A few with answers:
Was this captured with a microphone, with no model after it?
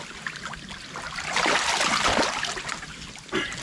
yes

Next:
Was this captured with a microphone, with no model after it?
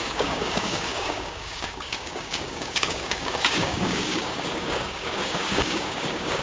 no